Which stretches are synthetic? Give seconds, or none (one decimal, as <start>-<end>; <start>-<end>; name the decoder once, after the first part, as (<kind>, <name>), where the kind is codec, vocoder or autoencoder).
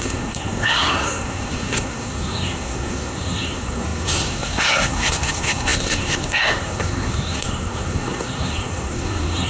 0.0-9.5 (codec, SNAC)